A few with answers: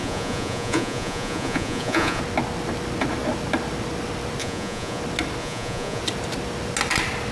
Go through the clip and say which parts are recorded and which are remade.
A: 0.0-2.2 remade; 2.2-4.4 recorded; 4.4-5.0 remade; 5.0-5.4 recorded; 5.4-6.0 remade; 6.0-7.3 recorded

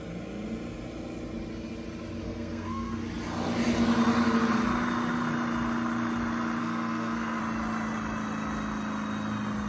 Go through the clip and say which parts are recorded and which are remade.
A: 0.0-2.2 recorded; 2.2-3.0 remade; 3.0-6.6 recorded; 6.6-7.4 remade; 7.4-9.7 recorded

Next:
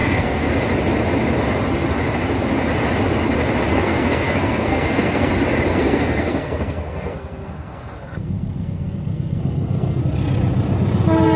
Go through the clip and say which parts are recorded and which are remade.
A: 0.0-0.5 remade; 0.5-3.7 recorded; 3.7-5.3 remade; 5.3-5.7 recorded; 5.7-10.0 remade; 10.0-11.4 recorded